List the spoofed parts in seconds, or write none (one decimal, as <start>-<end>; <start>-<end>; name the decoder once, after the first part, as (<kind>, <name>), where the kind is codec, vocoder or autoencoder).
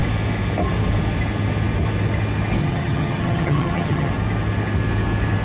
2.6-4.1 (vocoder, HiFi-GAN)